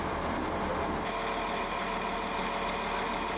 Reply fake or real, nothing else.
real